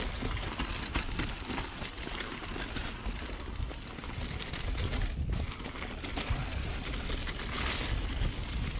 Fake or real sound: real